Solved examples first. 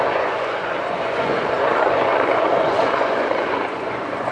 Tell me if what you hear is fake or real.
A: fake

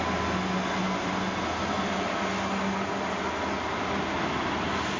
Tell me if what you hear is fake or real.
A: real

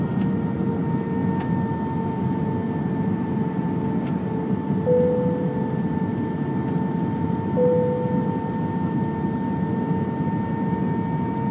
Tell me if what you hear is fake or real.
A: real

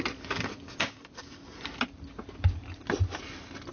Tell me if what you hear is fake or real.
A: real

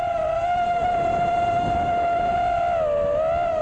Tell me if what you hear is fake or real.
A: real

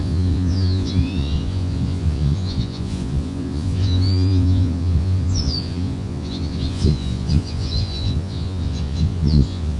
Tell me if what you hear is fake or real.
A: fake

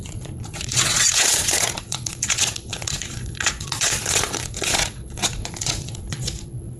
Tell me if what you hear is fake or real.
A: fake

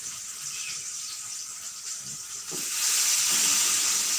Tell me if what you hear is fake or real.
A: real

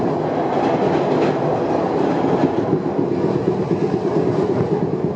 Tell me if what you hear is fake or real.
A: real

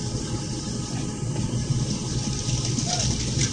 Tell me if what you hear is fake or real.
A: real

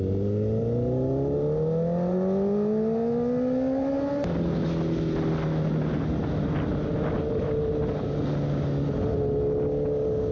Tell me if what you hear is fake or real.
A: real